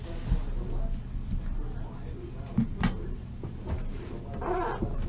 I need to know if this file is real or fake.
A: real